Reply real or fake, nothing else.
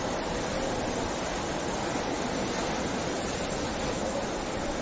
real